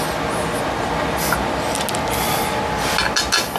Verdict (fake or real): real